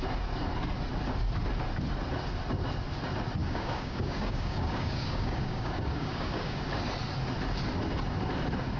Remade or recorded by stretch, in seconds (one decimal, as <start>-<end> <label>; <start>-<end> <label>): 0.0-3.4 recorded; 3.4-6.6 remade; 6.6-8.8 recorded

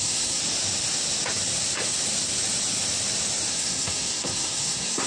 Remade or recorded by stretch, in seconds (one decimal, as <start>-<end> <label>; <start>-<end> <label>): 0.0-0.4 remade; 0.4-3.5 recorded; 3.5-5.1 remade

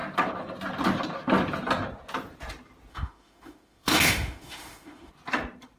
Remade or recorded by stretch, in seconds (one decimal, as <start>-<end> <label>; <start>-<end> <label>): 0.0-2.9 recorded; 2.9-5.1 remade; 5.1-5.8 recorded

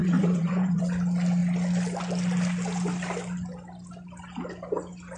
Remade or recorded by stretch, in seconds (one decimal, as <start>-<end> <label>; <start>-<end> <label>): 0.0-0.8 remade; 0.8-5.2 recorded